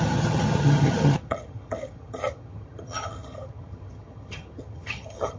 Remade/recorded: remade